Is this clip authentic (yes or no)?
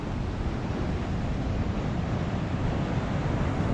no